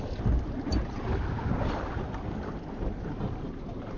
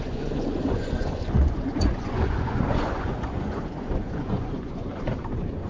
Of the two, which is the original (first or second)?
first